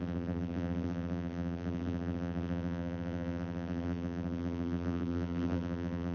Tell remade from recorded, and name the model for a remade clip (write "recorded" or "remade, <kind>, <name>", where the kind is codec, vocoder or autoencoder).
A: remade, vocoder, BigVGAN v2